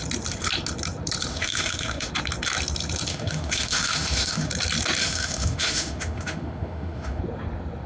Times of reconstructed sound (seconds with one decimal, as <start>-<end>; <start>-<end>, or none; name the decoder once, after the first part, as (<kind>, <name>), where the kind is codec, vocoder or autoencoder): 1.3-2.1 (autoencoder, DAC-VAE); 3.1-4.5; 5.0-7.2